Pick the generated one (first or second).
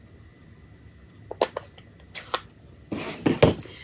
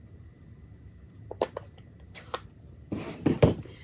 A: second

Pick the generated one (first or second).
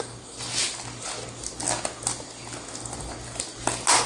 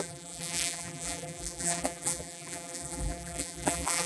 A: second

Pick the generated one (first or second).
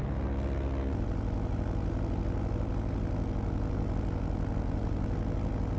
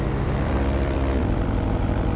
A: second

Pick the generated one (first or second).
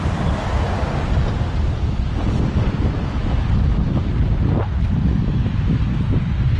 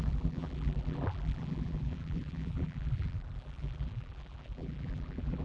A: second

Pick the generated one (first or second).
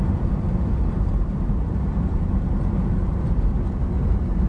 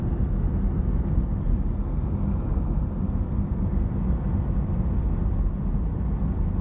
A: first